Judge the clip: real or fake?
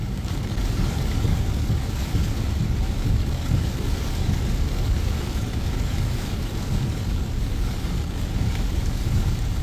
fake